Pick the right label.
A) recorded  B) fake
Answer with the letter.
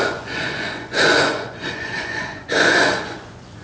B